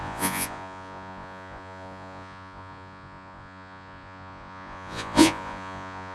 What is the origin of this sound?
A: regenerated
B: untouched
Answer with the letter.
A